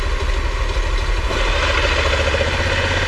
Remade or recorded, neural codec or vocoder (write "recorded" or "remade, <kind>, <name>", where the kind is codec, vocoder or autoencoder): recorded